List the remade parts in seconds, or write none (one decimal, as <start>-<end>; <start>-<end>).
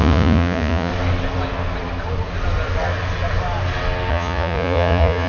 0.0-0.9; 4.1-5.3